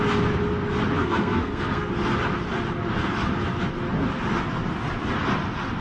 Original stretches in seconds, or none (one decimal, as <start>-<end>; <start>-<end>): 0.0-1.0; 1.9-5.8

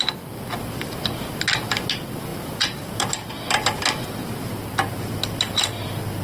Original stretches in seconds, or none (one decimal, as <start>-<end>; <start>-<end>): 0.0-6.2

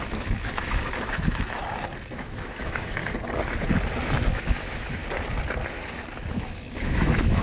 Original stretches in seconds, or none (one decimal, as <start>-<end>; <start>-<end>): 1.6-2.2; 3.0-4.3; 5.0-6.3

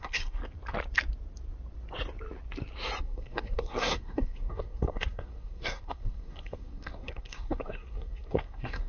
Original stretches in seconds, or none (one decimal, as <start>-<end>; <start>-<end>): 0.4-3.0

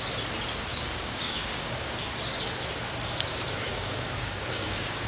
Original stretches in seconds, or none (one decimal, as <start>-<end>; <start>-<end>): 0.0-0.7; 2.1-3.7

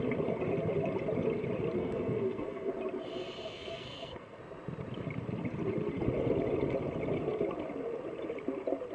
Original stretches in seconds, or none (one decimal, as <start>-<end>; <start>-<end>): 0.0-1.8; 2.7-3.5; 4.4-8.9